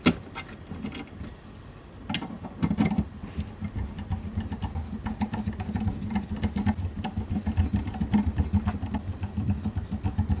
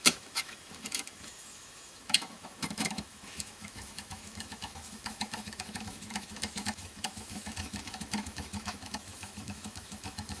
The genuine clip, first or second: first